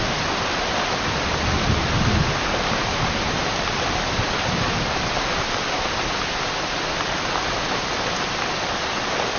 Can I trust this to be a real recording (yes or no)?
yes